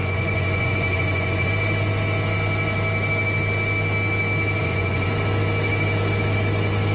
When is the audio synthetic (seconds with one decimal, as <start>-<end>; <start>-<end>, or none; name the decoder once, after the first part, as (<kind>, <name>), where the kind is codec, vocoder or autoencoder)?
0.0-1.5 (vocoder, Vocos); 4.6-5.1